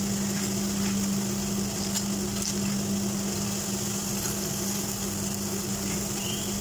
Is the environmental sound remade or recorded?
remade